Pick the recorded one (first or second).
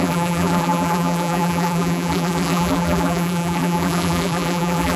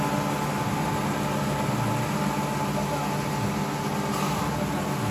second